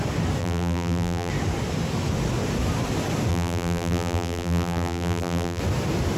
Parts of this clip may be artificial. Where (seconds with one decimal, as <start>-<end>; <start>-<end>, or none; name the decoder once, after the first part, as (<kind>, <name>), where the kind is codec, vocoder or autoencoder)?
0.4-1.3 (vocoder, BigVGAN v2); 3.3-5.6